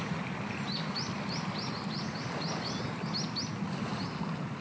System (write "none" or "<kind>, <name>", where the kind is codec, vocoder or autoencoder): none